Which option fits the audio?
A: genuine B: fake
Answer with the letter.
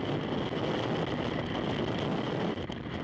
A